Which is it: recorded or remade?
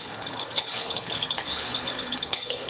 remade